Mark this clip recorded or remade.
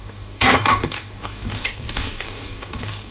remade